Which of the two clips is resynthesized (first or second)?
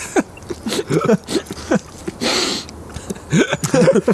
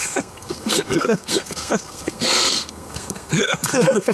second